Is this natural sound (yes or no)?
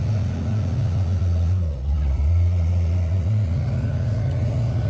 no